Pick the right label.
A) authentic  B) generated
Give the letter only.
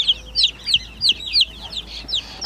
A